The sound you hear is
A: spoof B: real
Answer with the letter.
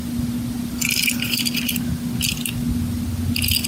B